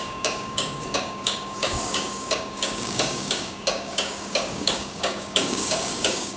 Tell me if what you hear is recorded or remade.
remade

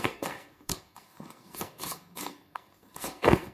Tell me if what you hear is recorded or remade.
remade